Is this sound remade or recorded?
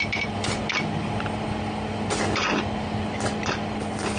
remade